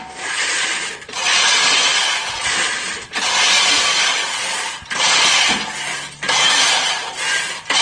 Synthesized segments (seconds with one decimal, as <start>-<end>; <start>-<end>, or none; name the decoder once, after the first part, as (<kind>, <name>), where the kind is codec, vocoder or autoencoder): none